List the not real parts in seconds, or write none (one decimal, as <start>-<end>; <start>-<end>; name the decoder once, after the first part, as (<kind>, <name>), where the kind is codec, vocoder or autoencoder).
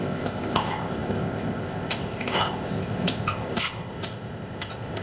0.0-5.0 (codec, ZipCodec)